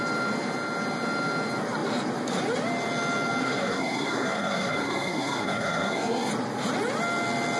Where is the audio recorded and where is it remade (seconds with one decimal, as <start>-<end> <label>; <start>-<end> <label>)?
0.0-3.4 recorded; 3.4-6.3 remade; 6.3-7.6 recorded